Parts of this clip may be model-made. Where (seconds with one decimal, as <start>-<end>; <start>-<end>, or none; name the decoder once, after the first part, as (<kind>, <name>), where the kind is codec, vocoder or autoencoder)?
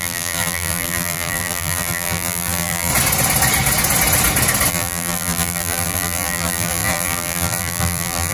0.0-2.9 (vocoder, BigVGAN v2); 4.7-8.3